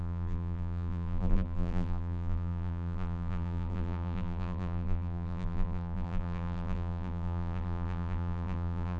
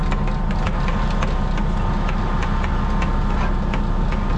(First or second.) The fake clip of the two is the first